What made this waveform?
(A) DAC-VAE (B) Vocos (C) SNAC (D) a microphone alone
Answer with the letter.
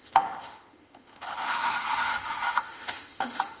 A